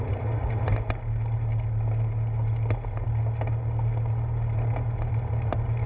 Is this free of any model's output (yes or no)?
yes